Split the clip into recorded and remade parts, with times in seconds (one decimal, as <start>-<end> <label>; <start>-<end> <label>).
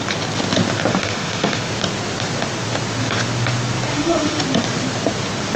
0.0-0.9 recorded; 0.9-1.7 remade; 1.7-3.9 recorded; 3.9-4.4 remade; 4.4-5.6 recorded